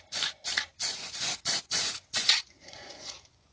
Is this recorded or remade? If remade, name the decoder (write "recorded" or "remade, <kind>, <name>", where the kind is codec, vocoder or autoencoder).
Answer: remade, vocoder, Vocos